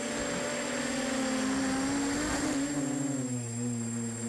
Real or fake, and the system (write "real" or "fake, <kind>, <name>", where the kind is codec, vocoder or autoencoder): real